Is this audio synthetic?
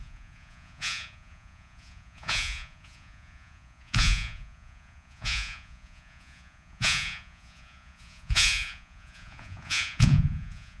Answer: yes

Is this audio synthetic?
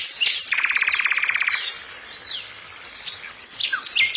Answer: no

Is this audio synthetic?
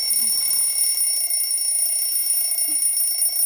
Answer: no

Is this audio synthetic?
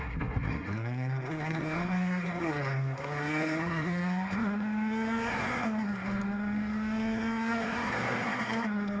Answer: yes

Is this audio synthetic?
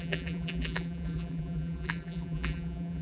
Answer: yes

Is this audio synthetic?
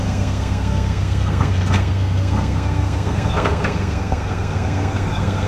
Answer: yes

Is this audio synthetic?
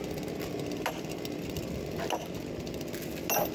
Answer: no